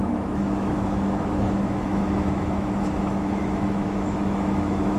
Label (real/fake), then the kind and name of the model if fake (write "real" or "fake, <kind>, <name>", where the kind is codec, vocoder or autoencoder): fake, autoencoder, DAC-VAE